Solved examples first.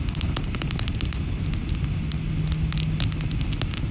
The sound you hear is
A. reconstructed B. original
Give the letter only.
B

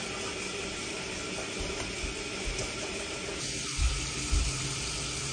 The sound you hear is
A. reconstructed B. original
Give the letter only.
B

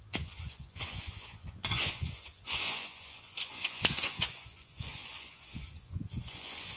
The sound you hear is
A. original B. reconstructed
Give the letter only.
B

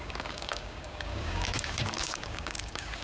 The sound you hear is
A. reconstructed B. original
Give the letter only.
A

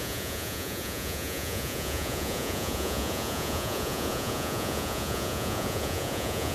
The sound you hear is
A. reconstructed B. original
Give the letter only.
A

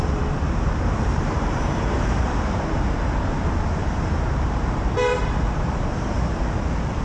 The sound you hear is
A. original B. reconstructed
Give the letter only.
B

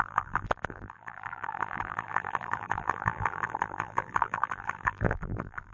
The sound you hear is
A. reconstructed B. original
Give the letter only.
A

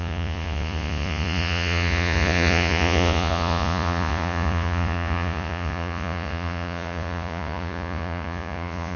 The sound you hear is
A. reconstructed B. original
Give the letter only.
A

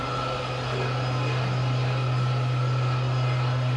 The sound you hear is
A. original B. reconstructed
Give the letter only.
A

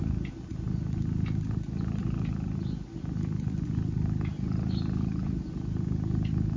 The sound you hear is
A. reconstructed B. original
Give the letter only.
B